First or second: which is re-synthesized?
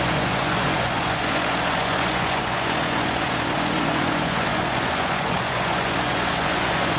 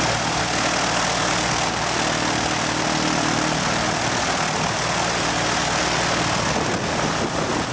first